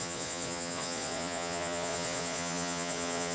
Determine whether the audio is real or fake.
fake